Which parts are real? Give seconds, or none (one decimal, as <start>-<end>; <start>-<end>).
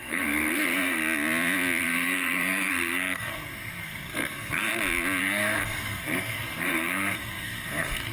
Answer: 1.0-1.8; 4.7-5.2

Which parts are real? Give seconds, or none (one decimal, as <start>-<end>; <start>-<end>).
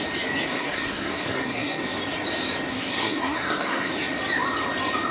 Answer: 0.0-0.5; 1.8-2.7; 3.9-5.1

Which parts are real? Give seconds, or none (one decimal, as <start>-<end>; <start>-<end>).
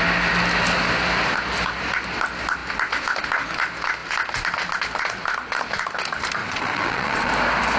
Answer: 0.0-6.4; 7.3-7.8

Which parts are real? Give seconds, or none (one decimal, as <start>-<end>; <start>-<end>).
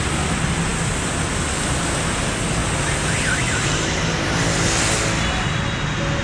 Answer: 0.0-6.2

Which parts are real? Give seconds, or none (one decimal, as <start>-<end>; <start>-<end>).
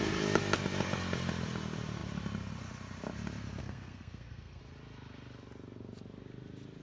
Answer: 0.0-3.6; 4.6-6.8